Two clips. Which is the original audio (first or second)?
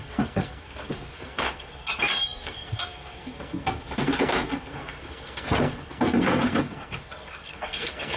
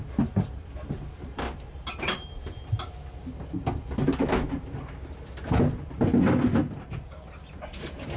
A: second